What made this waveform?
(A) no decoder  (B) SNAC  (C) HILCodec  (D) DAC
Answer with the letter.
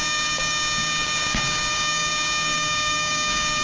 D